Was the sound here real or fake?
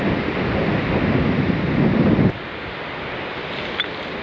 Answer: real